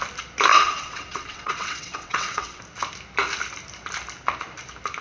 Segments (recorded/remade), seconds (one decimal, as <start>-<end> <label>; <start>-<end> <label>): 0.0-0.5 recorded; 0.5-2.6 remade; 2.6-5.0 recorded